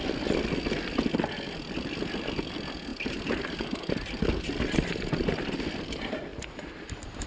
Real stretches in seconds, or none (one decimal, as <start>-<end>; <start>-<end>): 0.0-2.9; 3.9-6.3